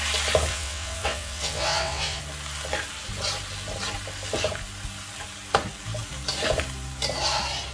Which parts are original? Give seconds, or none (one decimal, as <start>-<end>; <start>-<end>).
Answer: 0.0-0.5; 2.2-7.7